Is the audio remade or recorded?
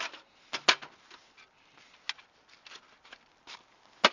recorded